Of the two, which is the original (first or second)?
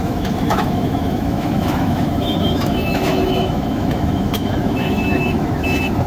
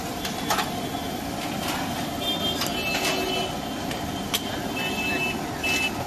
second